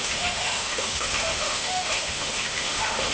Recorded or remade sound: remade